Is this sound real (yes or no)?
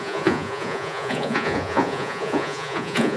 no